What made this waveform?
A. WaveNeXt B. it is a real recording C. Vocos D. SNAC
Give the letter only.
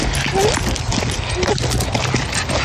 B